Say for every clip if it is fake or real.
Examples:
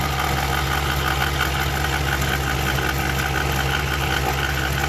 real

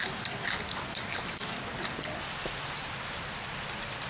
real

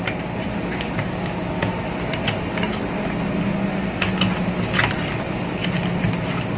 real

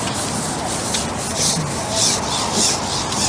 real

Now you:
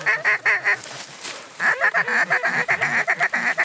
real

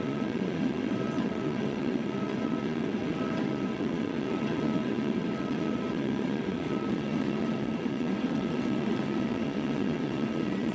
fake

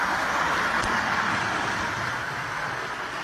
fake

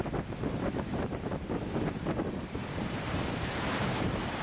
fake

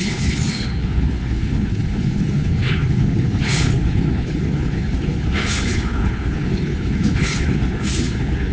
fake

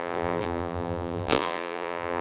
fake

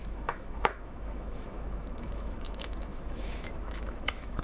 fake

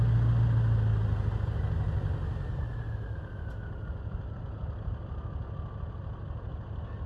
real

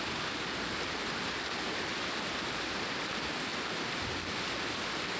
real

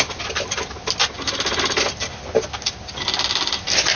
real